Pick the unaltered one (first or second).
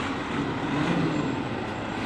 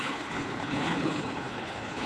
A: first